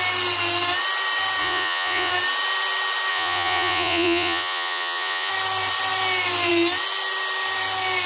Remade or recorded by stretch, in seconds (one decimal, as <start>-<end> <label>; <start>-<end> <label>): 0.0-1.4 recorded; 1.4-2.1 remade; 2.1-3.1 recorded; 3.1-5.3 remade; 5.3-8.1 recorded